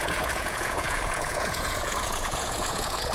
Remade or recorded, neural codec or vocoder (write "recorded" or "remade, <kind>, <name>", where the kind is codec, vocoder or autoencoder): remade, vocoder, Vocos